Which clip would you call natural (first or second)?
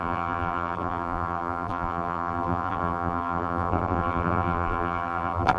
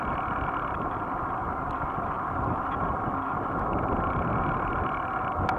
second